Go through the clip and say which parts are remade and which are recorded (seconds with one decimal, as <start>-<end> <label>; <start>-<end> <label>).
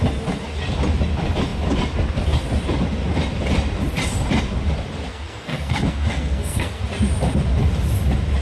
0.0-5.1 recorded; 5.1-6.8 remade; 6.8-8.4 recorded